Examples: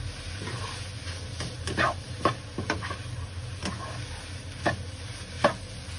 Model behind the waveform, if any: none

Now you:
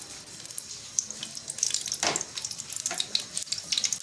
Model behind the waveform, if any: none